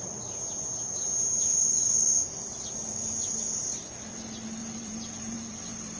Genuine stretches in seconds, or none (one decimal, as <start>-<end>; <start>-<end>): 0.0-4.6

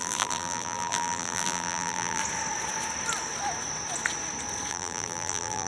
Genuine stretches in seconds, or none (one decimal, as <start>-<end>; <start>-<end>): 2.2-4.7

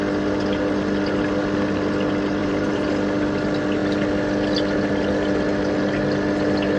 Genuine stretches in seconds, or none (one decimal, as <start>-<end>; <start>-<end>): 0.0-2.4; 2.9-6.8

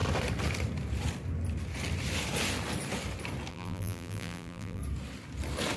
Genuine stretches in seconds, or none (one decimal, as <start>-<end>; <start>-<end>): 0.0-3.5; 4.8-5.8

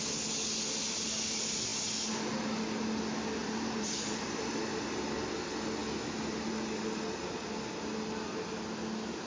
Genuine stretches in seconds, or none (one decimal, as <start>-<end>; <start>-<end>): 0.0-3.4; 4.6-9.3

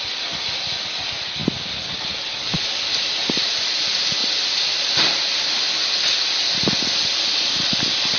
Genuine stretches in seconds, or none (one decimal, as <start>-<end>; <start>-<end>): none